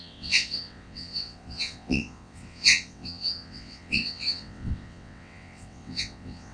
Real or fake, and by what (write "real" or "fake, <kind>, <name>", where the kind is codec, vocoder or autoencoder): fake, vocoder, WaveNeXt